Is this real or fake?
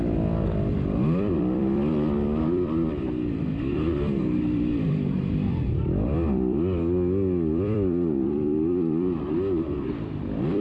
fake